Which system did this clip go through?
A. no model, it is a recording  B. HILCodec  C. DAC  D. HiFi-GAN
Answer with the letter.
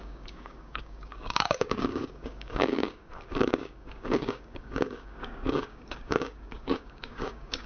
C